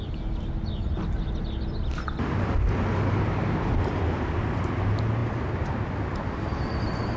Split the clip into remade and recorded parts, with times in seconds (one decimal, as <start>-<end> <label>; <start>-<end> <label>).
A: 0.0-7.2 recorded